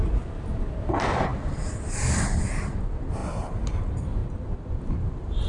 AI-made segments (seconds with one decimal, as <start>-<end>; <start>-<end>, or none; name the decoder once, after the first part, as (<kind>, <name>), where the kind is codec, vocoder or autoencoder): 1.3-2.4 (vocoder, BigVGAN v2)